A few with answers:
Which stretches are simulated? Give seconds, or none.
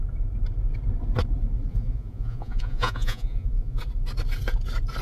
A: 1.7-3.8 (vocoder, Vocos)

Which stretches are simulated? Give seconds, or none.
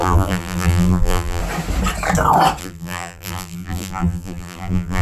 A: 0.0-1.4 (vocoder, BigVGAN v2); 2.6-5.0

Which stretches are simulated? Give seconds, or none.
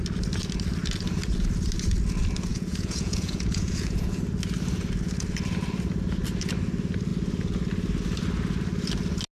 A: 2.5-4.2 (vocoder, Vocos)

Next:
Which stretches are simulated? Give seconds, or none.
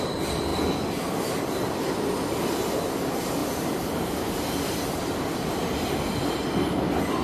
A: none